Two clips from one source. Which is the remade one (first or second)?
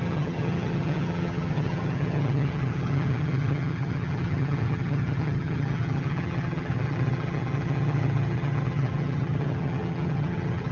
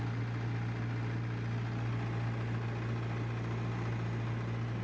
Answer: first